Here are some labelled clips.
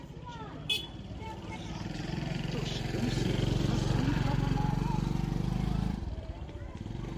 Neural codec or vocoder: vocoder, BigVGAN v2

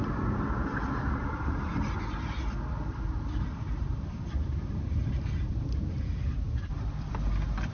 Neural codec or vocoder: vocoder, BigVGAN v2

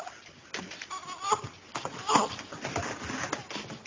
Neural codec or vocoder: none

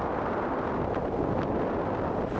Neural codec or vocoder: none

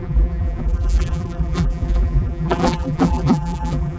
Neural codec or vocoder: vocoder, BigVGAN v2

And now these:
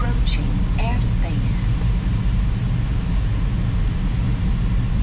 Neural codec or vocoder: none